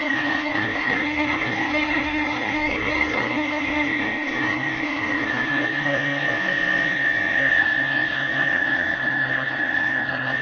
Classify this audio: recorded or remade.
remade